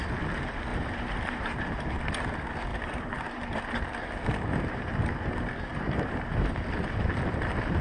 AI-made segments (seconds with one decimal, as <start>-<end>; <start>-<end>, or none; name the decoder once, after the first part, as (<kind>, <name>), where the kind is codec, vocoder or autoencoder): 0.7-1.6 (vocoder, BigVGAN v2); 2.7-3.6; 5.7-6.5